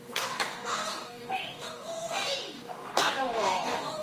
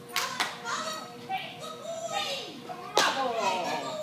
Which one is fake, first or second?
first